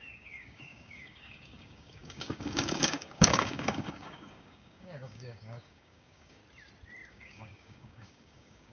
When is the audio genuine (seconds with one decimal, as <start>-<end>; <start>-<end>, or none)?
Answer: 6.4-7.1